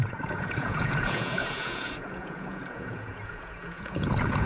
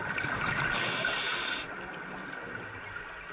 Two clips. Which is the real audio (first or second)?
second